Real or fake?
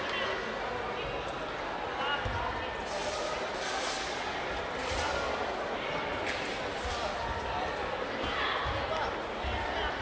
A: real